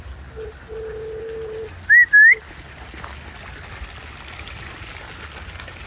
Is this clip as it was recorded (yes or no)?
yes